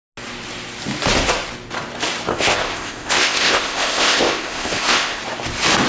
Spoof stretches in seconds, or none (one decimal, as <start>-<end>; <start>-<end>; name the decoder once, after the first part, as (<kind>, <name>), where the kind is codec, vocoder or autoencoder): 2.3-5.2 (codec, ZipCodec)

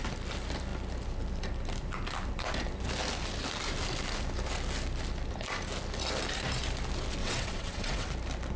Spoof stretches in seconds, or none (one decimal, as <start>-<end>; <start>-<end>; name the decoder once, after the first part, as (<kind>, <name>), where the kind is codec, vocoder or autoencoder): 7.2-8.1 (vocoder, WaveNeXt)